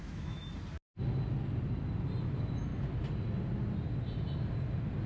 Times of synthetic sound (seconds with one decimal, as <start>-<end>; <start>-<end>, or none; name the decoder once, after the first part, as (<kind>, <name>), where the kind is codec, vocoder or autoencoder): 0.0-0.4 (autoencoder, DAC-VAE); 2.2-2.7